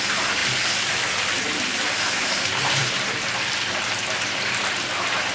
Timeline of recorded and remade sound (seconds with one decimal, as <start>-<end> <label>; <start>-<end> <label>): 0.0-0.4 recorded; 0.4-0.9 remade; 0.9-2.8 recorded; 2.8-4.7 remade; 4.7-5.3 recorded